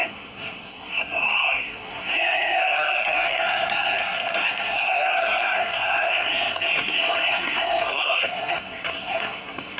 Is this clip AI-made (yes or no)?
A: yes